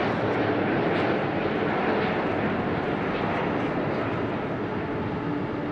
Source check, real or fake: real